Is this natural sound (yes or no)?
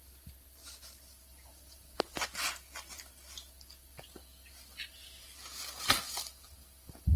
yes